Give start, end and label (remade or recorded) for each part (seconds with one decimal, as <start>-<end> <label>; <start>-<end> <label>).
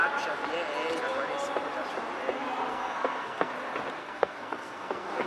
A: 0.0-2.7 recorded; 2.7-3.5 remade; 3.5-4.0 recorded; 4.0-5.3 remade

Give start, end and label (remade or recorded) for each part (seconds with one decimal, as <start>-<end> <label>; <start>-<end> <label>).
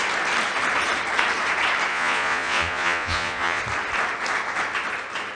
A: 0.0-1.9 recorded; 1.9-3.6 remade; 3.6-5.3 recorded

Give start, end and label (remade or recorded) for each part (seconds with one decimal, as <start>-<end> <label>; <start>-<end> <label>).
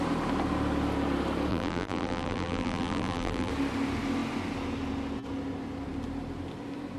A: 0.0-1.5 recorded; 1.5-3.5 remade; 3.5-7.0 recorded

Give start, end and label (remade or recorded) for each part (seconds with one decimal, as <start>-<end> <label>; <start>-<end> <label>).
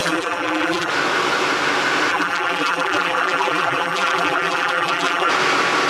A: 0.0-0.9 remade; 0.9-2.1 recorded; 2.1-5.3 remade; 5.3-5.9 recorded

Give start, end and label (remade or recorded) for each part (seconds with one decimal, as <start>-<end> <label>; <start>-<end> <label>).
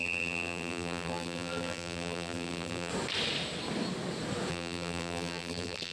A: 0.0-2.9 remade; 2.9-4.5 recorded; 4.5-5.9 remade